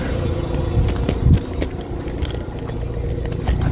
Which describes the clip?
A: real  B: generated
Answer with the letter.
A